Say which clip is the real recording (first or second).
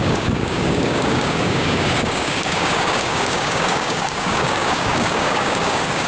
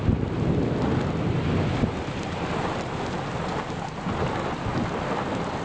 second